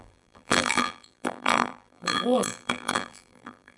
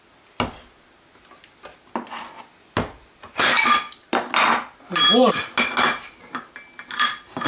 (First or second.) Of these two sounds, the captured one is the second